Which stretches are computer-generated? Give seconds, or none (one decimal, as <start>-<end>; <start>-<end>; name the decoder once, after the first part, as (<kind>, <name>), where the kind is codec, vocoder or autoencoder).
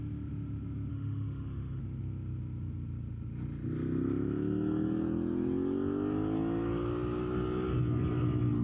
0.9-1.8 (autoencoder, DAC-VAE)